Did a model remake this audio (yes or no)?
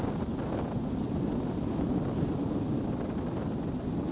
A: no